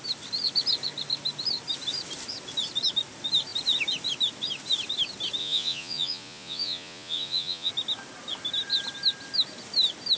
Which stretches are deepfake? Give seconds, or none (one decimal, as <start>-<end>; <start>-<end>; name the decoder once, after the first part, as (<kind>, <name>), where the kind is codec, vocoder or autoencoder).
5.4-7.7 (vocoder, Vocos)